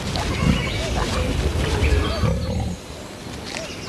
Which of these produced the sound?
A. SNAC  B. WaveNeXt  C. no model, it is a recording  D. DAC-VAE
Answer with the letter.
C